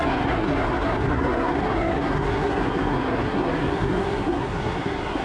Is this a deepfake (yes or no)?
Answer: yes